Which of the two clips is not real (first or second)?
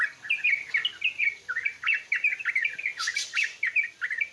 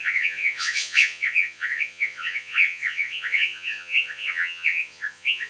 second